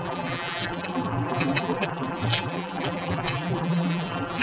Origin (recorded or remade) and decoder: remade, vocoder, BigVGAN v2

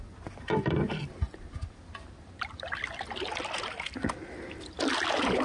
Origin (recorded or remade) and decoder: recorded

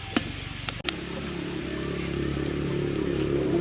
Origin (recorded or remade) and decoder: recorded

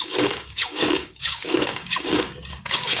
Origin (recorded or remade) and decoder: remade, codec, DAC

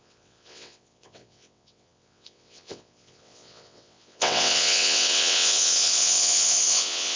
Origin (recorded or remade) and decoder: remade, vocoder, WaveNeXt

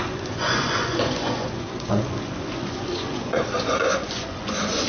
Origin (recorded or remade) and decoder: remade, vocoder, Vocos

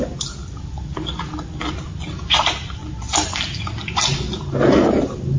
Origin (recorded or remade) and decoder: recorded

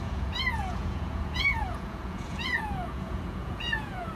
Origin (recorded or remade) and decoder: remade, vocoder, Vocos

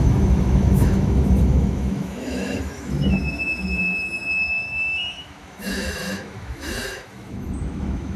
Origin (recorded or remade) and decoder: remade, autoencoder, DAC-VAE